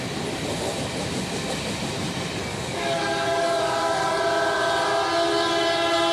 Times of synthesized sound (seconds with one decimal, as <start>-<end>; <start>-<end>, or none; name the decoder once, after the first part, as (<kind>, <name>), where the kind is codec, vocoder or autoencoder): 2.4-4.2 (codec, DAC)